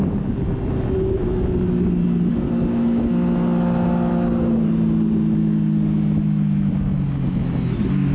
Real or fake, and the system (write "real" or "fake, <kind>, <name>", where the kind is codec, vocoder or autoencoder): real